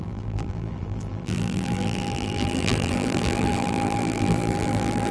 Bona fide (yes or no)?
no